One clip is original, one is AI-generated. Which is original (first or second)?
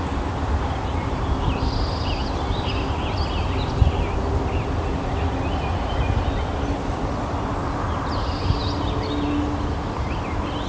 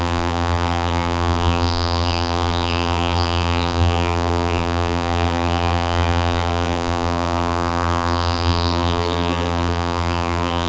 first